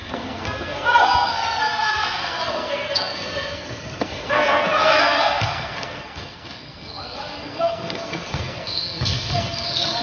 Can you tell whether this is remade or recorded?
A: remade